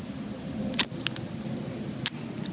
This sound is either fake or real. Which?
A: real